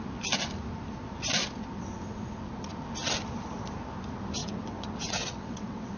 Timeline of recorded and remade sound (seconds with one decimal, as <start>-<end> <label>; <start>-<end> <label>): 0.0-1.4 recorded; 1.4-2.7 remade; 2.7-4.4 recorded; 4.4-6.0 remade